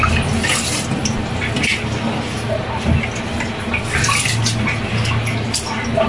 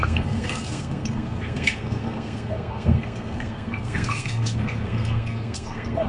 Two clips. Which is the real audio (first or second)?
first